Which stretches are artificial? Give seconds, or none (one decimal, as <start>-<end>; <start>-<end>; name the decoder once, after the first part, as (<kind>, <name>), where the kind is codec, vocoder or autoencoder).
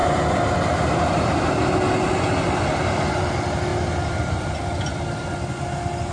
0.0-1.7 (vocoder, BigVGAN v2); 3.7-5.6